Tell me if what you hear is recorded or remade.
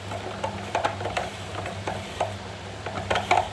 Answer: recorded